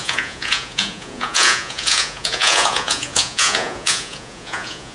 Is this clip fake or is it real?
fake